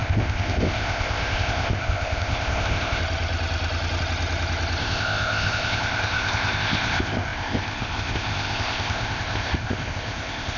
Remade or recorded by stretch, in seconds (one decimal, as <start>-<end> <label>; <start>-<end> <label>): 0.0-3.0 remade; 3.0-4.8 recorded; 4.8-10.6 remade